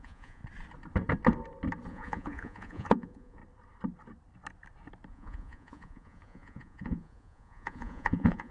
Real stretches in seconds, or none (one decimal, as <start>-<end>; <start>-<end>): 0.4-1.9; 3.4-5.1

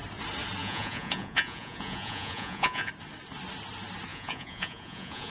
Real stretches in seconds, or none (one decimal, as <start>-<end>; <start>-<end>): 0.0-0.6; 2.9-4.1

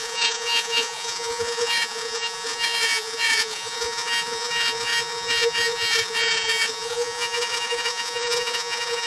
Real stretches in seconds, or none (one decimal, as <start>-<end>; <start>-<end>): none